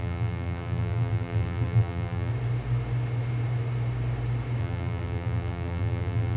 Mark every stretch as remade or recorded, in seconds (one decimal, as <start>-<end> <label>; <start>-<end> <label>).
0.0-2.3 remade; 2.3-4.6 recorded; 4.6-6.4 remade